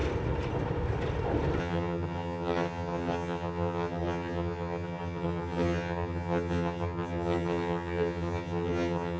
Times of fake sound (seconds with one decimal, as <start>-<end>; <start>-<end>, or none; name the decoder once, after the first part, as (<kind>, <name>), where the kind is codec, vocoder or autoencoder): 1.6-9.2 (vocoder, HiFi-GAN)